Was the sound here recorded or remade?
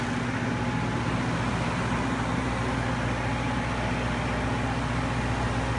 recorded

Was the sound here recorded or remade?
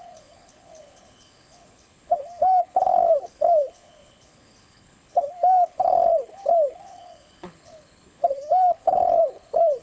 remade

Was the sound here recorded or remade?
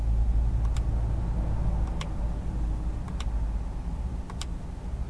recorded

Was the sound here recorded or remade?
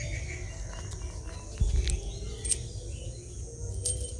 recorded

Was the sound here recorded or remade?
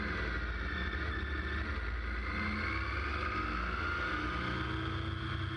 recorded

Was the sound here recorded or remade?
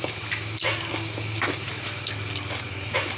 recorded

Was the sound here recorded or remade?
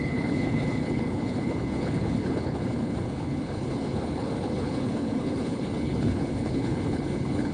remade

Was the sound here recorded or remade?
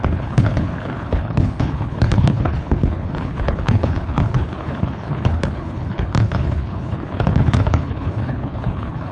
remade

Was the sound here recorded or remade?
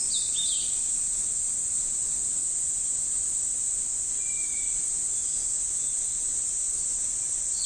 recorded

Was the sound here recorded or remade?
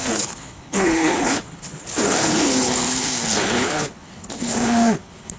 remade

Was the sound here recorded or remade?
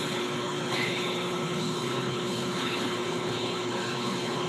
remade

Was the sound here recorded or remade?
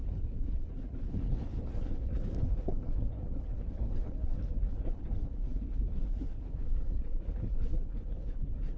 remade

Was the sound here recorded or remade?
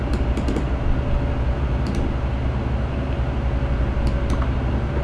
recorded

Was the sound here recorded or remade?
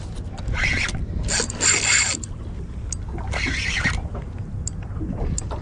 recorded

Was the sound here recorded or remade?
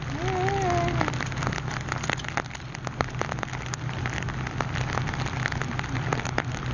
recorded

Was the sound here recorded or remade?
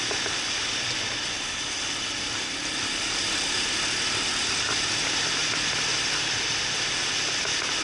recorded